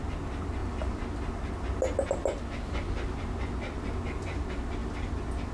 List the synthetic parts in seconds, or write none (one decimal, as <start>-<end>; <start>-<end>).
none